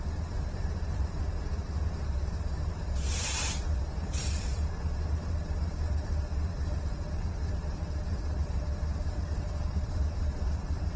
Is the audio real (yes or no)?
no